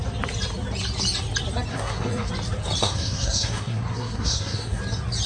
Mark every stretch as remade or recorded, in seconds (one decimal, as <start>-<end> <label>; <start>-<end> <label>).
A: 0.0-1.7 recorded; 1.7-2.3 remade; 2.3-2.8 recorded; 2.8-4.8 remade; 4.8-5.3 recorded